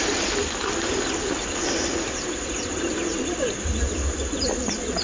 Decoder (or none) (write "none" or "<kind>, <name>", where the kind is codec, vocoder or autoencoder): none